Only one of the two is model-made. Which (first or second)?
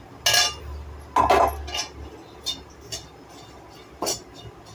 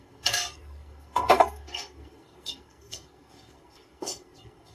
second